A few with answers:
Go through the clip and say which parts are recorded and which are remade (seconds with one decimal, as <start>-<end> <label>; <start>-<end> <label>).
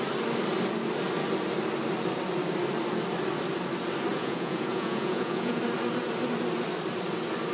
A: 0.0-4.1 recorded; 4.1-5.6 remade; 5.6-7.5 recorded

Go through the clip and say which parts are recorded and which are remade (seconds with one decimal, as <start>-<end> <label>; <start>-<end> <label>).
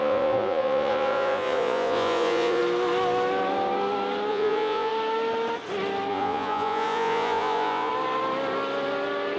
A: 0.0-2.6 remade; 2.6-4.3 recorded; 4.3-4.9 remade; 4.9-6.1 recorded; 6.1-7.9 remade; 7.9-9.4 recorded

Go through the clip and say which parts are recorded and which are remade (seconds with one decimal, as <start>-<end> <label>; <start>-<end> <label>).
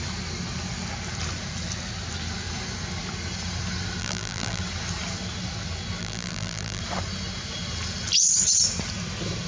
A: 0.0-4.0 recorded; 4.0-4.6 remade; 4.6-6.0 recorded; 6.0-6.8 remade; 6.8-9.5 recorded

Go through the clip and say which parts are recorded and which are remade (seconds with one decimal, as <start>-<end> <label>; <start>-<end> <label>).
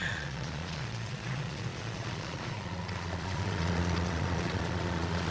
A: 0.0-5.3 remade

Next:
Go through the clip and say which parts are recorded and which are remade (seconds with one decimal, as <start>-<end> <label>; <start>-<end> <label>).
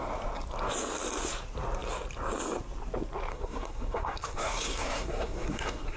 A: 0.0-3.3 recorded; 3.3-6.0 remade